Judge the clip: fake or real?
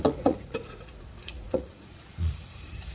fake